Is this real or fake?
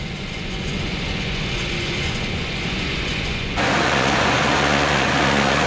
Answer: fake